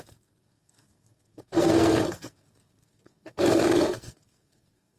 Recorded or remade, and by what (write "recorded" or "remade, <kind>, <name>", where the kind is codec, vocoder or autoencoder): remade, codec, SNAC